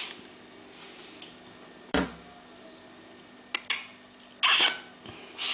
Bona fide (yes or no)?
yes